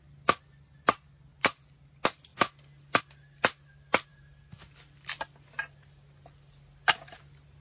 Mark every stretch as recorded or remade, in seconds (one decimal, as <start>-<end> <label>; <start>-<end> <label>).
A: 0.0-7.6 recorded